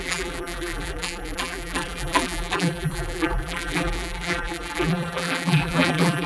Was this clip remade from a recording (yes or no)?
yes